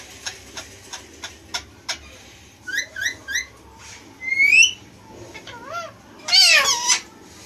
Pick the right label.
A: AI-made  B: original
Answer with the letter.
B